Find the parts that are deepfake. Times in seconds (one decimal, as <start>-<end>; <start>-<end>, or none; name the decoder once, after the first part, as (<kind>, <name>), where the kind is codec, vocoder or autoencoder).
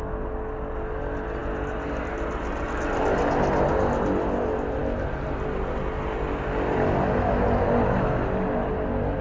none